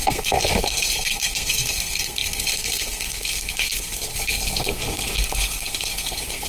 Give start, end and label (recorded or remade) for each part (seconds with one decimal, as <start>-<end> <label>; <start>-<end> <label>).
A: 0.0-6.5 remade